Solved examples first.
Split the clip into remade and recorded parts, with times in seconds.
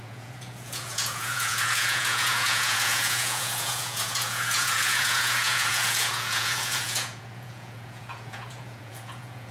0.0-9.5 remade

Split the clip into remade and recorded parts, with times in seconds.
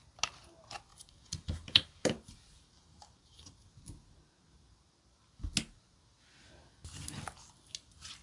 0.0-0.9 recorded; 0.9-3.7 remade; 3.7-8.2 recorded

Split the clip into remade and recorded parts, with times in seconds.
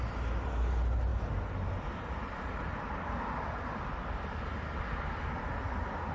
0.0-1.1 recorded; 1.1-4.8 remade; 4.8-6.1 recorded